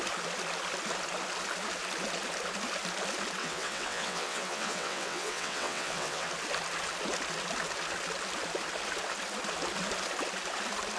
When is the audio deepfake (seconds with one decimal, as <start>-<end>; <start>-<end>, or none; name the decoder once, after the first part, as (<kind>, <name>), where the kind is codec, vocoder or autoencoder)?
3.4-6.3 (vocoder, WaveNeXt)